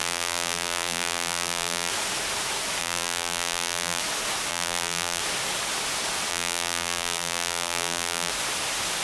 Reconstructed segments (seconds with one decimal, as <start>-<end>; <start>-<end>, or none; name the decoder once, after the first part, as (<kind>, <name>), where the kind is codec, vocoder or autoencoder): 0.0-1.9 (vocoder, BigVGAN v2); 2.8-4.0; 4.5-5.2; 6.3-8.3